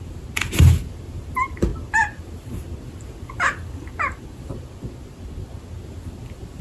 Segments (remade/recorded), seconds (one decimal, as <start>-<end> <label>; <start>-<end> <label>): 0.0-6.6 recorded